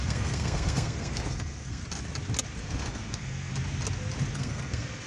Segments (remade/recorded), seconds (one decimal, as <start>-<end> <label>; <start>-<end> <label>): 0.0-1.8 remade; 1.8-2.6 recorded; 2.6-3.5 remade; 3.5-4.3 recorded; 4.3-5.1 remade